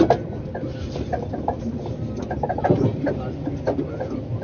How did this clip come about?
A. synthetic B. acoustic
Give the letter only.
B